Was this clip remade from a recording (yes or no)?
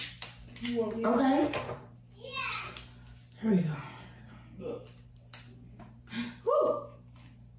no